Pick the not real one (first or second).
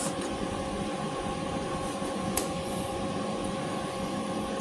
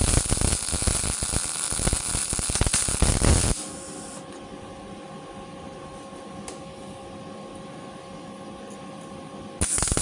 first